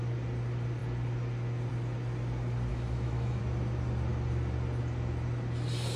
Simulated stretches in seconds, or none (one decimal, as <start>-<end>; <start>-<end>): 2.7-3.4